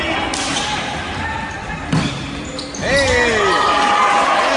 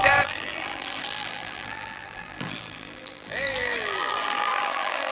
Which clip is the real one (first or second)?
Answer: first